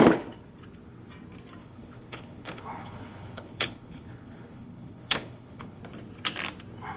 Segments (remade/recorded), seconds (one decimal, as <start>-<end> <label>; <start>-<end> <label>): 0.0-1.6 recorded; 1.6-5.8 remade; 5.8-7.0 recorded